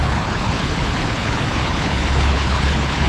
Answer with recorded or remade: remade